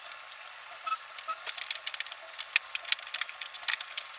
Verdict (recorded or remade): recorded